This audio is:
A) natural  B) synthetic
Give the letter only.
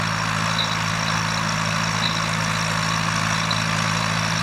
A